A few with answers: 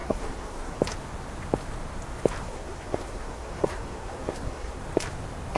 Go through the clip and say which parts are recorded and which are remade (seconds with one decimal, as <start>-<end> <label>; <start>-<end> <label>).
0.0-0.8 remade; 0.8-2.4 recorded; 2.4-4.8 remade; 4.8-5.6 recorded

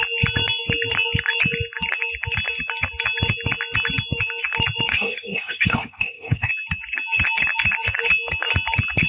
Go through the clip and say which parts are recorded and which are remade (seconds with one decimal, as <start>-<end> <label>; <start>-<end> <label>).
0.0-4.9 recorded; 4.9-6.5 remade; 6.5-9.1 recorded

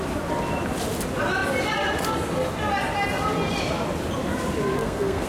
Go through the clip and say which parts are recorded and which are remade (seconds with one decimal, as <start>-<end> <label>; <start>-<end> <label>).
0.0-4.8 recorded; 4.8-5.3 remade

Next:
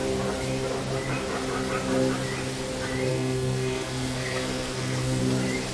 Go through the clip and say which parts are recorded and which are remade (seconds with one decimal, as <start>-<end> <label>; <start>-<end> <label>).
0.0-3.1 recorded; 3.1-5.2 remade; 5.2-5.7 recorded

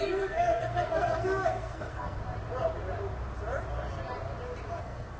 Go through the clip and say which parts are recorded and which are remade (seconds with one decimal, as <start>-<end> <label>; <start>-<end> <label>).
0.0-2.2 remade; 2.2-4.8 recorded; 4.8-5.2 remade